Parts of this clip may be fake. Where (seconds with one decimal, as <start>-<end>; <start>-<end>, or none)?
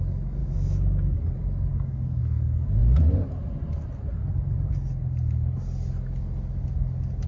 0.4-1.2; 1.7-2.2